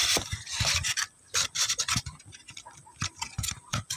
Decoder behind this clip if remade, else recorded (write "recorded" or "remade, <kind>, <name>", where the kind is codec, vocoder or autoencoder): remade, vocoder, BigVGAN v2